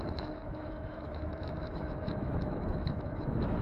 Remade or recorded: remade